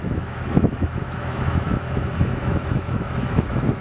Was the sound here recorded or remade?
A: remade